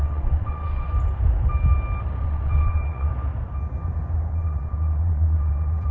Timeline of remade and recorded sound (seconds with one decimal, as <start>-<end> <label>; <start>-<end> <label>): 0.0-0.9 remade; 0.9-2.2 recorded; 2.2-3.1 remade; 3.1-4.3 recorded; 4.3-5.9 remade